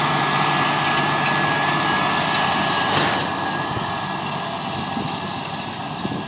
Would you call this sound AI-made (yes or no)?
no